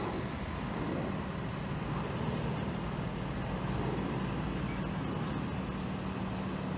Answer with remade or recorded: recorded